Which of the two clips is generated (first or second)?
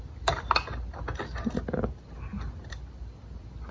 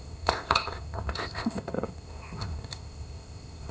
second